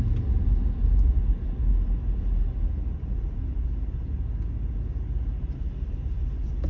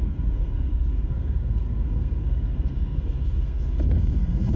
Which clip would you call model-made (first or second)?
second